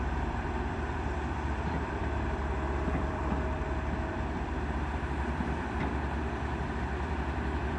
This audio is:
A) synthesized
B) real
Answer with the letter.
A